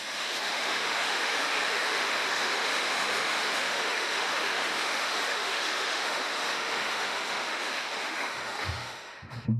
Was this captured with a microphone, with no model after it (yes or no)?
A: no